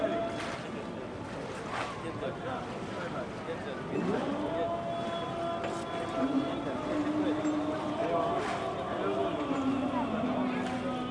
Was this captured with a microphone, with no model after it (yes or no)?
yes